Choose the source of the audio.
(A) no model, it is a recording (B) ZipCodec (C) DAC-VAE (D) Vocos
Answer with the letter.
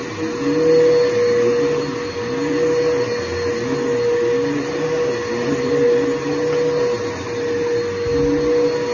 A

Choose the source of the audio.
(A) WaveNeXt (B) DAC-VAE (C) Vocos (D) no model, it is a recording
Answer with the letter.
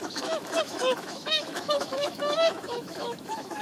B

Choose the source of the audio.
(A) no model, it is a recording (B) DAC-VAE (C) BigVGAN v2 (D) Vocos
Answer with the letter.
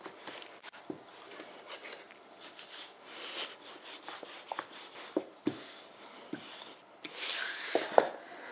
A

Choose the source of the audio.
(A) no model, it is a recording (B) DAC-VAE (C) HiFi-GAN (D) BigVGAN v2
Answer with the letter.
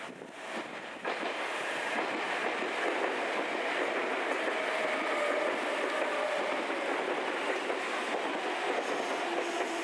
A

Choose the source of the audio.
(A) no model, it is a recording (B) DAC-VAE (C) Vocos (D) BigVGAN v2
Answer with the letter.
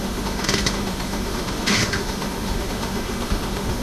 B